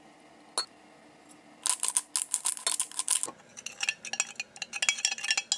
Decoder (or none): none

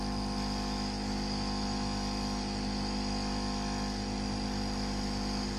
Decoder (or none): none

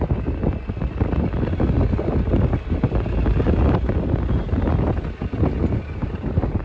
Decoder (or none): none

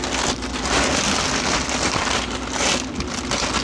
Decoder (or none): none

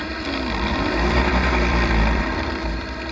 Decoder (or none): vocoder, BigVGAN v2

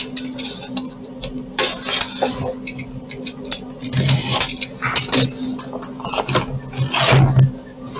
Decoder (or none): none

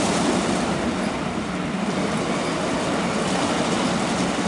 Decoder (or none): none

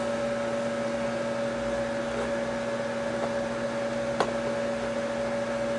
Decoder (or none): none